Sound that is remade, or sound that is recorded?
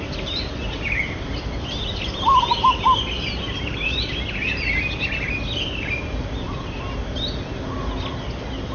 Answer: recorded